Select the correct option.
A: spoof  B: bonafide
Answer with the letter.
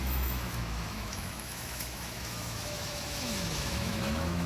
A